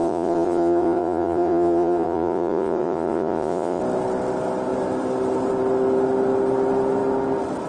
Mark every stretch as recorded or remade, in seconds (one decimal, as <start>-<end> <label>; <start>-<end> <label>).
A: 0.0-3.8 remade; 3.8-7.7 recorded